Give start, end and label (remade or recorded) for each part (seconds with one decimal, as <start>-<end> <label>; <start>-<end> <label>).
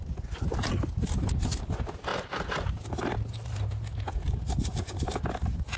0.0-5.8 recorded